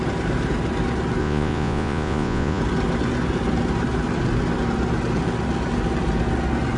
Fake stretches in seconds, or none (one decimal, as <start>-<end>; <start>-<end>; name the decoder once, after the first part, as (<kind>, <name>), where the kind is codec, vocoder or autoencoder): 1.2-2.6 (vocoder, Vocos)